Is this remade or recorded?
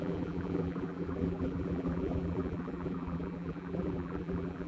remade